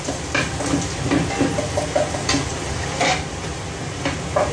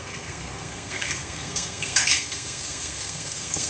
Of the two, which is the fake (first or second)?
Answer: second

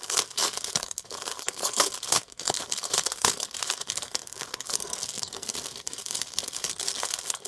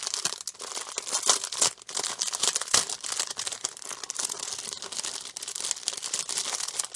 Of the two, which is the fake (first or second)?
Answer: first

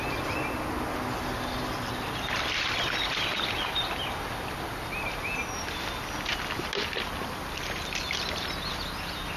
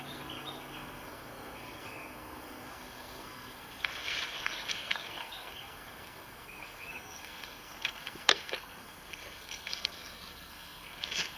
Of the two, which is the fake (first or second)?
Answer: second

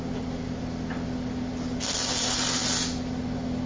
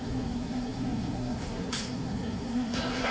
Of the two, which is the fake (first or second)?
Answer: second